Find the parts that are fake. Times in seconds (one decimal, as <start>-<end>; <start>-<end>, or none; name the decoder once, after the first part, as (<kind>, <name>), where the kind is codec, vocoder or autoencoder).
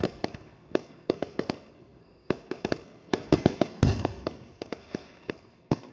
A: 0.0-5.9 (codec, SNAC)